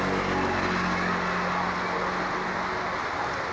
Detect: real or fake real